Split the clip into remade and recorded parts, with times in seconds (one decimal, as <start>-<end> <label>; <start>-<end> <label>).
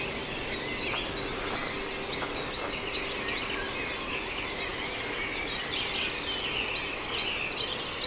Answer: 0.0-8.1 recorded